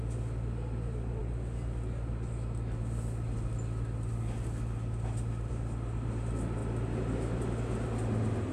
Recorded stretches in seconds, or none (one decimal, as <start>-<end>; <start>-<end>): 0.0-8.5